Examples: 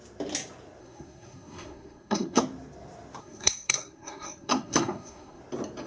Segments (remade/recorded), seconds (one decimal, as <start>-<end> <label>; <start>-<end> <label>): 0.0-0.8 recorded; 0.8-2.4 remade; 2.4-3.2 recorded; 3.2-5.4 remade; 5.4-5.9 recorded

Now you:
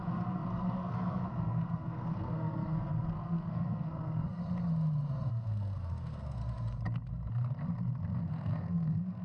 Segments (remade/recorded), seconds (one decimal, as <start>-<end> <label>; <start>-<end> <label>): 0.0-4.4 remade; 4.4-5.3 recorded; 5.3-6.4 remade; 6.4-8.2 recorded; 8.2-9.2 remade

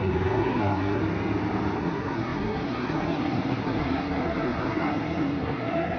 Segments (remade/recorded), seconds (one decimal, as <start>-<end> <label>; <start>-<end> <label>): 0.0-1.0 remade; 1.0-1.8 recorded; 1.8-6.0 remade

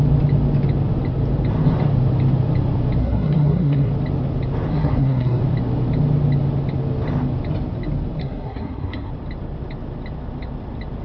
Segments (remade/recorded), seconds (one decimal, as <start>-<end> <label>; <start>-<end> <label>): 0.0-3.0 recorded; 3.0-3.9 remade; 3.9-4.7 recorded; 4.7-5.4 remade; 5.4-8.2 recorded; 8.2-9.1 remade; 9.1-11.0 recorded

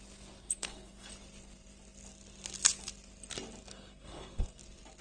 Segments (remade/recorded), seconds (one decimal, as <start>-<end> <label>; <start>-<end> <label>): 0.0-0.4 recorded; 0.4-1.1 remade; 1.1-3.7 recorded; 3.7-4.6 remade; 4.6-5.0 recorded

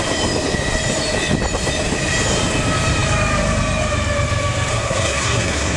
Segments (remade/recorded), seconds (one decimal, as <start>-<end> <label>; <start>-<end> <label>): 0.0-4.7 recorded; 4.7-5.8 remade

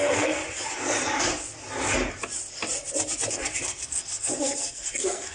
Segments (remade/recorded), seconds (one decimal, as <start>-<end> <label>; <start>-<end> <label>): 0.0-0.4 remade; 0.4-3.3 recorded; 3.3-5.3 remade

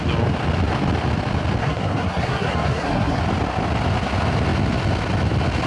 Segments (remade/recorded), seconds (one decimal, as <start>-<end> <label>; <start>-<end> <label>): 0.0-1.6 recorded; 1.6-3.2 remade; 3.2-5.7 recorded